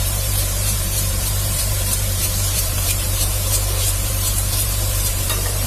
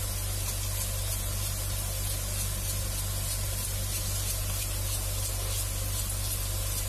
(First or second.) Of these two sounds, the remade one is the first